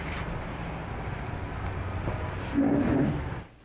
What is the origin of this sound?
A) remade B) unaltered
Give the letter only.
B